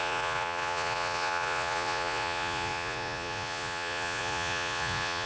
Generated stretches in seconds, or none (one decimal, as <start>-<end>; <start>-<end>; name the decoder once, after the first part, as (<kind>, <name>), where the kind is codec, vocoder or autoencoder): 0.0-5.3 (vocoder, Vocos)